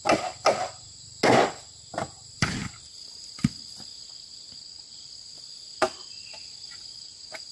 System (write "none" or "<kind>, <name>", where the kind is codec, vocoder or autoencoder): none